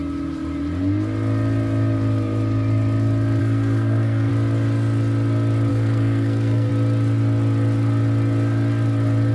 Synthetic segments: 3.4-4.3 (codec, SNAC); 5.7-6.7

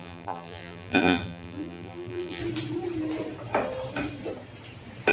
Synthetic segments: 0.0-2.4 (vocoder, BigVGAN v2)

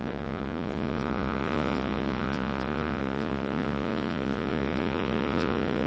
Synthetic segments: 0.0-5.9 (vocoder, Vocos)

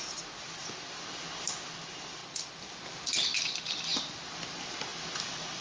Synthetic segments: none

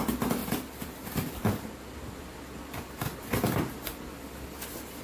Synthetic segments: 0.4-1.8 (vocoder, BigVGAN v2)

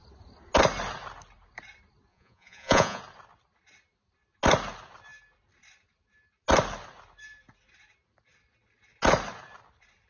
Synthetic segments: 2.1-3.0 (vocoder, Vocos)

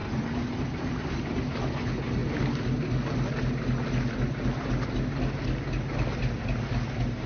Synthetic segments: none